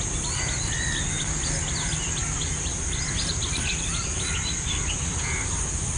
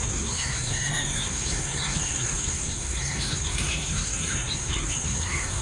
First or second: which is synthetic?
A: second